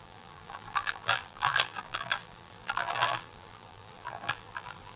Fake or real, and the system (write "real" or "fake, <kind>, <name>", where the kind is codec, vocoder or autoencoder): fake, vocoder, BigVGAN v2